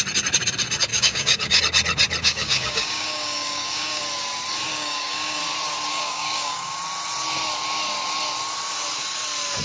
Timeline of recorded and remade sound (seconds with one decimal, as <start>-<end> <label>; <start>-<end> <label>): 0.0-0.9 recorded; 0.9-1.6 remade; 1.6-2.2 recorded; 2.2-4.0 remade; 4.0-4.7 recorded; 4.7-5.4 remade; 5.4-5.9 recorded; 5.9-6.8 remade; 6.8-9.6 recorded